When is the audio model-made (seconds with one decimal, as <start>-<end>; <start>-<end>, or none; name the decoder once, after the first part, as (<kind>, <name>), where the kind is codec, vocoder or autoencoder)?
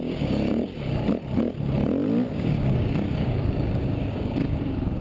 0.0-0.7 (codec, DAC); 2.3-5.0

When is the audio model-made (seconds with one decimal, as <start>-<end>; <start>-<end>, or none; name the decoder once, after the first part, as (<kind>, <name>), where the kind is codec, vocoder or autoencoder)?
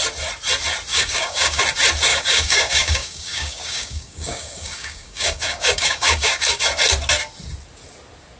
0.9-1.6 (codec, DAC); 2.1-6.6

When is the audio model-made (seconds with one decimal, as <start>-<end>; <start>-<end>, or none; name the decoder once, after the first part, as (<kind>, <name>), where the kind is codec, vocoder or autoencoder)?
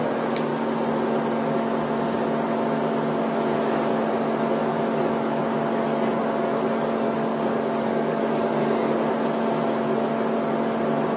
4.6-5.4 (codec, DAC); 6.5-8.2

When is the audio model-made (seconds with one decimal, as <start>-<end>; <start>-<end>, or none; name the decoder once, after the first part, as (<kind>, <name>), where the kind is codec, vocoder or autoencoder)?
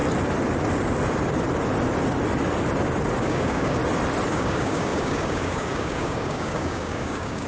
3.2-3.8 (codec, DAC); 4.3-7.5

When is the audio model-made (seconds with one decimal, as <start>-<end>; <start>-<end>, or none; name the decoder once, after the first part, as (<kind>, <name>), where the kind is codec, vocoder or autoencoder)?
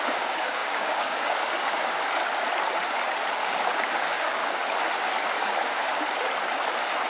0.0-2.2 (codec, DAC); 3.4-4.4; 5.3-5.9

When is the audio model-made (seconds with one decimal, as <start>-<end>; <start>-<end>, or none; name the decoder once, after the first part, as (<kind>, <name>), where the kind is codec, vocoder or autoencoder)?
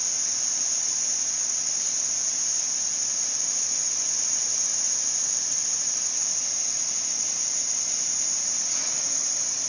none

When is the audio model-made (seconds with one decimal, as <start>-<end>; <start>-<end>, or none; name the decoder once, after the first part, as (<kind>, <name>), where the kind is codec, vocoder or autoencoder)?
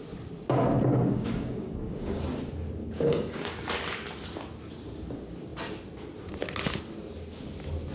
1.1-2.2 (codec, DAC); 2.8-3.6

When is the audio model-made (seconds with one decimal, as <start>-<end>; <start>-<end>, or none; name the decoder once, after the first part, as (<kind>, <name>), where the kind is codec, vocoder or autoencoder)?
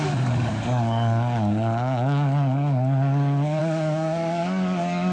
0.0-5.1 (codec, DAC)